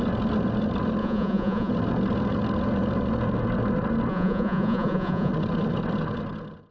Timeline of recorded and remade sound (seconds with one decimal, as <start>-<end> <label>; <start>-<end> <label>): 0.0-1.0 recorded; 1.0-1.7 remade; 1.7-4.1 recorded; 4.1-5.3 remade; 5.3-6.7 recorded